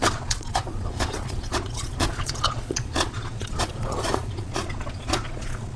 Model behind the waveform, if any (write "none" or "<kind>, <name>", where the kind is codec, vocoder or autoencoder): vocoder, Vocos